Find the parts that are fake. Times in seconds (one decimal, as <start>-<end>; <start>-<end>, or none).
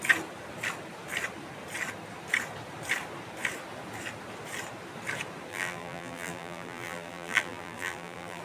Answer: 5.5-8.4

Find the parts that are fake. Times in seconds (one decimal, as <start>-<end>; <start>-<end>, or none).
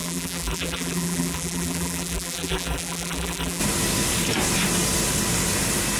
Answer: 0.0-3.6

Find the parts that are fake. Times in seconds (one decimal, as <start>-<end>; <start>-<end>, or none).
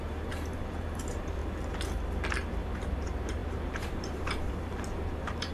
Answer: 0.0-1.4; 2.6-5.5